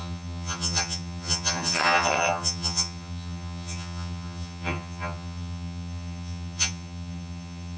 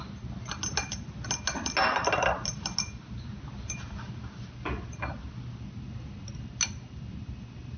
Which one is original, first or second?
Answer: second